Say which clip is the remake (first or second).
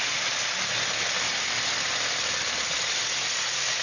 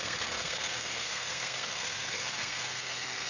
second